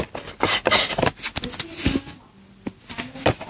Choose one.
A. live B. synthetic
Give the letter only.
A